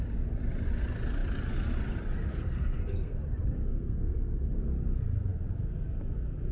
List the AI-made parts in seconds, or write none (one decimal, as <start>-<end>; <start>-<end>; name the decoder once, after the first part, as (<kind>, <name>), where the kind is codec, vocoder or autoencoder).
2.3-3.2 (codec, SNAC); 3.7-4.6